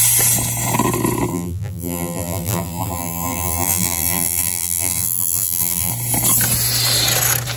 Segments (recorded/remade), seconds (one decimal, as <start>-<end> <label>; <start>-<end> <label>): 0.0-1.3 recorded; 1.3-5.9 remade; 5.9-7.6 recorded

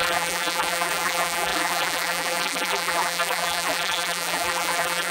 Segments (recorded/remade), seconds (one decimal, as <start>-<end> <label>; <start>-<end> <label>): 0.0-5.1 remade

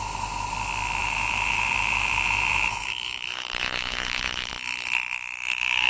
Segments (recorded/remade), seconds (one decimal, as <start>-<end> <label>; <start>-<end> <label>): 0.0-1.0 recorded; 1.0-4.5 remade; 4.5-5.9 recorded

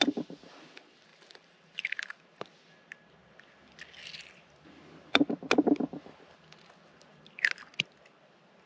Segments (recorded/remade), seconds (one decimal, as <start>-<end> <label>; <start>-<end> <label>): 0.0-1.1 recorded; 1.1-2.2 remade; 2.2-8.7 recorded

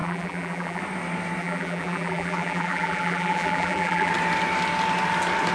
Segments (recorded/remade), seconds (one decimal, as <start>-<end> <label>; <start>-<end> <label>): 0.0-0.8 remade; 0.8-1.4 recorded; 1.4-4.1 remade; 4.1-5.5 recorded

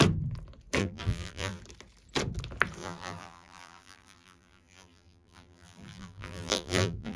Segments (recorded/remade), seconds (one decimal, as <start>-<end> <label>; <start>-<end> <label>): 0.0-0.8 recorded; 0.8-1.6 remade; 1.6-2.8 recorded; 2.8-7.2 remade

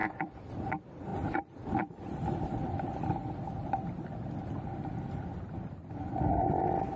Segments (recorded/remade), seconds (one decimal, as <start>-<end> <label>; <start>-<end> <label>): 0.0-7.0 remade

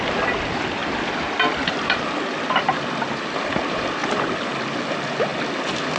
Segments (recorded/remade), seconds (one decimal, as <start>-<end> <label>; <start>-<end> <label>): 0.0-5.3 remade; 5.3-6.0 recorded